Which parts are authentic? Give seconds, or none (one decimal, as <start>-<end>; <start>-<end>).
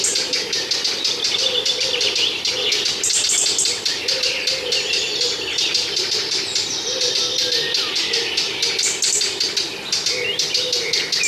0.0-11.3